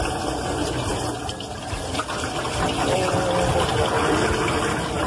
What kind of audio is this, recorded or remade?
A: recorded